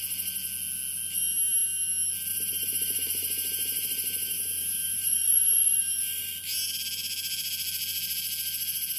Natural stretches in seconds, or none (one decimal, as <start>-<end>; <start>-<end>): 0.0-2.3; 6.3-9.0